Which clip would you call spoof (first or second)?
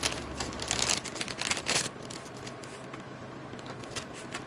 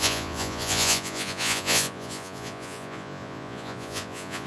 second